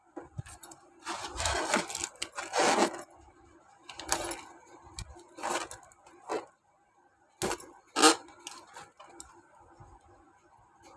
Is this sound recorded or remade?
recorded